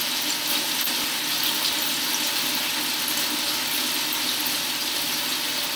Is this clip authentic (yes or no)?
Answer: yes